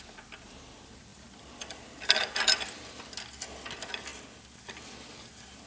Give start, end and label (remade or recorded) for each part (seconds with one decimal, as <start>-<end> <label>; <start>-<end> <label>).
0.0-1.1 recorded; 1.1-3.0 remade; 3.0-5.7 recorded